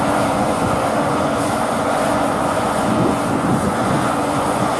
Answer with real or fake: fake